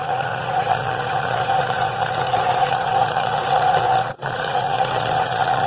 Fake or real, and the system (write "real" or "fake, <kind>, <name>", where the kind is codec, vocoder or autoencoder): fake, vocoder, Vocos